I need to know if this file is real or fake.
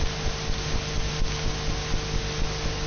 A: real